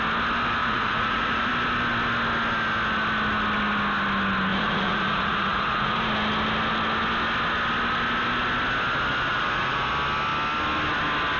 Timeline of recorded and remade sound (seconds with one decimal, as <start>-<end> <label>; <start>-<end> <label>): 0.0-0.6 recorded; 0.6-1.5 remade; 1.5-4.5 recorded; 4.5-6.1 remade; 6.1-9.3 recorded; 9.3-9.9 remade; 9.9-11.4 recorded